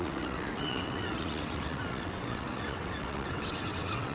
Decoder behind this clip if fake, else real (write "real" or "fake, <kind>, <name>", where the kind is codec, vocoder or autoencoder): fake, vocoder, WaveNeXt